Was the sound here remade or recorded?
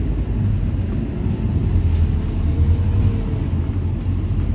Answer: recorded